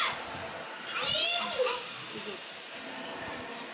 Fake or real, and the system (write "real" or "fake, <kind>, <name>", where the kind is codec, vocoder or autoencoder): real